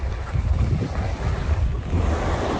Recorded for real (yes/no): yes